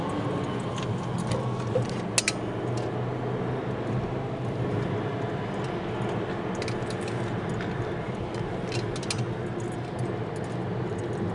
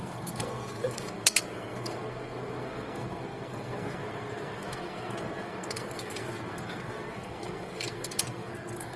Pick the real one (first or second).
first